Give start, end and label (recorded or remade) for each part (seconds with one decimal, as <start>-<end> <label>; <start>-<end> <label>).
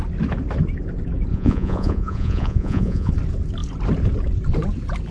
0.0-1.3 recorded; 1.3-3.1 remade; 3.1-5.1 recorded